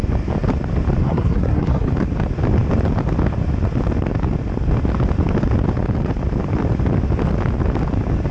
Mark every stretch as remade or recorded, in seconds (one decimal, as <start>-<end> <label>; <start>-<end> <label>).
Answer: 0.0-1.0 recorded; 1.0-1.9 remade; 1.9-8.3 recorded